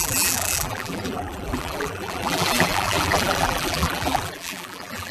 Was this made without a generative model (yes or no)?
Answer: no